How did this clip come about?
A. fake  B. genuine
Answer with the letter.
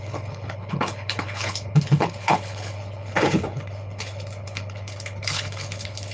A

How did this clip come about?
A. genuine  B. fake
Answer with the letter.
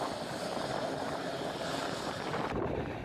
A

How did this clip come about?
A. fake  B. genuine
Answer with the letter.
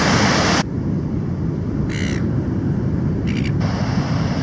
B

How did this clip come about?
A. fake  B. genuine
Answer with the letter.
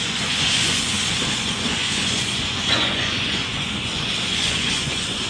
A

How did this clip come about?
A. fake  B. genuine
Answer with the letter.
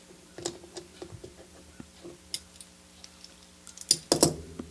B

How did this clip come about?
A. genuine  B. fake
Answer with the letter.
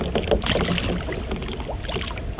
A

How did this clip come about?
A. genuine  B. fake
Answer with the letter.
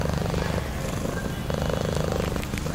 A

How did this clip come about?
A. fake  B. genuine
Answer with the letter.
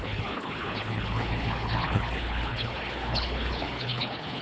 A